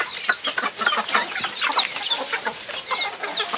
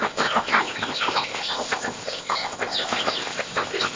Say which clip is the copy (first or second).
second